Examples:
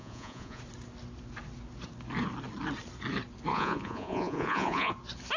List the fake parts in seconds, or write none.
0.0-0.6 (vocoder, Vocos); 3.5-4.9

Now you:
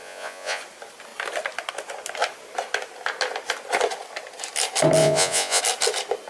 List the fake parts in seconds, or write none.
0.0-0.6 (vocoder, Vocos); 5.0-5.6

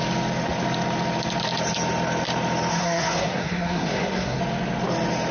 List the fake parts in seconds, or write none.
2.7-4.4 (codec, SNAC)

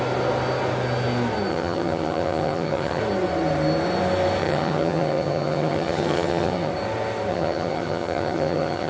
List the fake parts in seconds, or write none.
1.5-3.0 (vocoder, HiFi-GAN); 4.4-6.7; 7.3-8.9